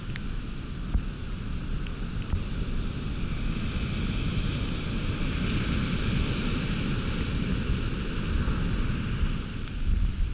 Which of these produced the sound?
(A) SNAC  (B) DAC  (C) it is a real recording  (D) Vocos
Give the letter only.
C